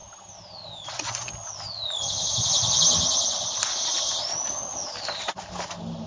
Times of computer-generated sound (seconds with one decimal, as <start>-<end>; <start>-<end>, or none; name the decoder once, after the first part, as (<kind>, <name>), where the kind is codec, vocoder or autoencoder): none